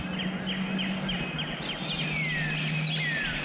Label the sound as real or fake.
real